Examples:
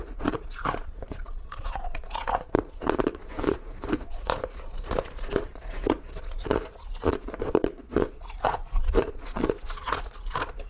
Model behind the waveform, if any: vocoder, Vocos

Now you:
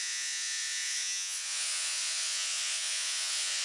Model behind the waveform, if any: vocoder, Vocos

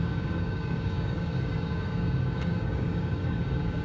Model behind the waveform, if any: codec, DAC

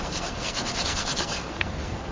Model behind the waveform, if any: codec, SNAC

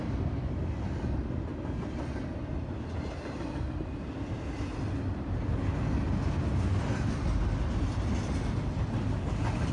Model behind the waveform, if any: none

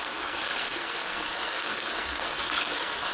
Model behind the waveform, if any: codec, SNAC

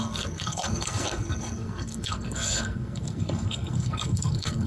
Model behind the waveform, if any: codec, SNAC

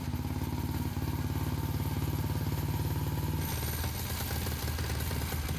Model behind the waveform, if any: none